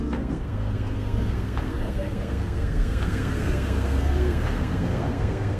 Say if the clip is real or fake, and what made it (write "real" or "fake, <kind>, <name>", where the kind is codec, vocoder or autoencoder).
fake, codec, SNAC